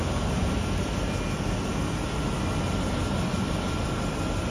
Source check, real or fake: real